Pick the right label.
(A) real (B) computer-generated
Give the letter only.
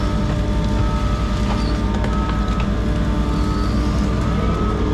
A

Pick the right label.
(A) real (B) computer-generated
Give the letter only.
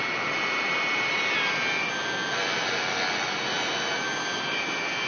A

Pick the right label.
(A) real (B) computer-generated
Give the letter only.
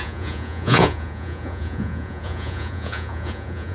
B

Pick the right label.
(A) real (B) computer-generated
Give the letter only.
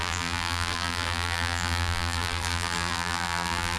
B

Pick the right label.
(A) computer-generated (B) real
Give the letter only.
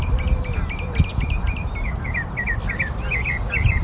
B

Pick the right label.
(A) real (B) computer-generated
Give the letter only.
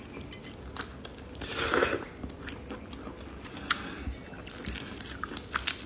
A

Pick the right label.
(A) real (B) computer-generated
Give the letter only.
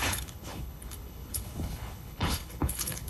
B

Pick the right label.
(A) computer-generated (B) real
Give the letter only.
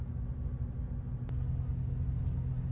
B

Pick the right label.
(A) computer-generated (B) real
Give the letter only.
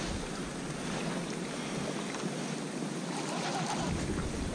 B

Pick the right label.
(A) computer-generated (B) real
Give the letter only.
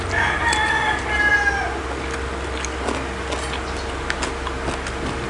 B